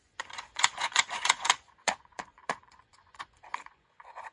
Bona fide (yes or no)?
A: no